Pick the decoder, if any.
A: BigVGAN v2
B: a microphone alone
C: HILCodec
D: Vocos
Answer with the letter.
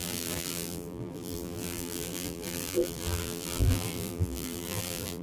A